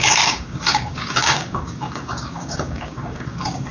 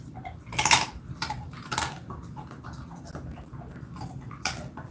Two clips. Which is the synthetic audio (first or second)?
first